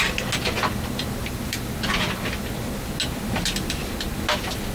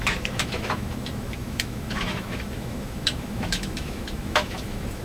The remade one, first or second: second